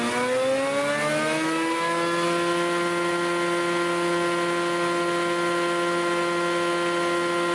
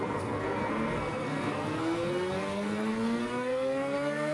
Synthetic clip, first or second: second